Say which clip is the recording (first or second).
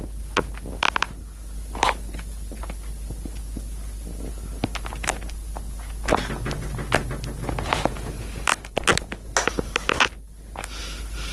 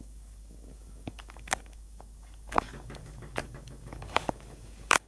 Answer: first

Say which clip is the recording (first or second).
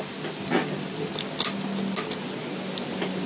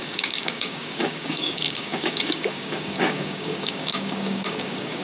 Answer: first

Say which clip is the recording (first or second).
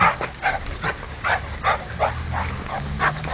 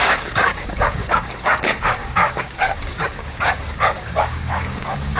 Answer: first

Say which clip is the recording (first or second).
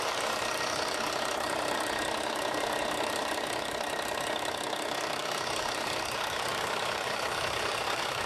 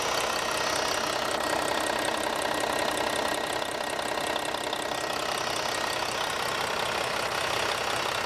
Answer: second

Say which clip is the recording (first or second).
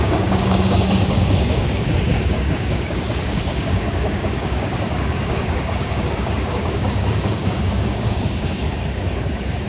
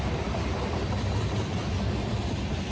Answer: second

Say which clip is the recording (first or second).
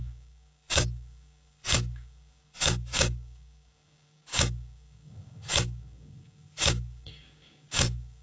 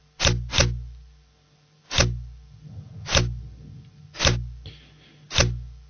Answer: second